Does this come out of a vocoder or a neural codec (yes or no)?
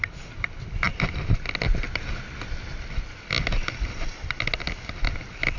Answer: no